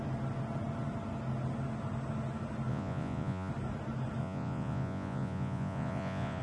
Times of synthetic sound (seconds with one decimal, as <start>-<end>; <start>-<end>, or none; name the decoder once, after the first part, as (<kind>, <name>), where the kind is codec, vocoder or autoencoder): 2.7-3.5 (vocoder, Vocos); 4.2-6.4